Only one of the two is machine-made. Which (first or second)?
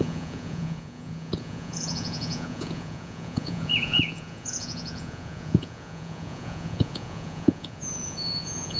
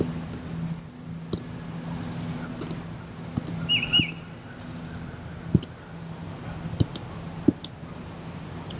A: first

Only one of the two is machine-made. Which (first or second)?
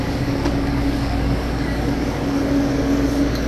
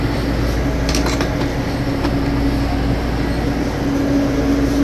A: first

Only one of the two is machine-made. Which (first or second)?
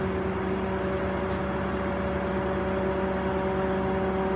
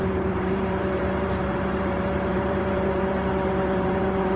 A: second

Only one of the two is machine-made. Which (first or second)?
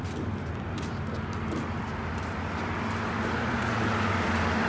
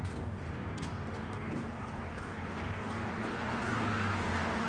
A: second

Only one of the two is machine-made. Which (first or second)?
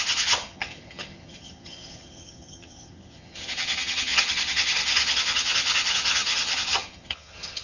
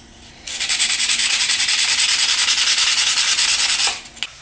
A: first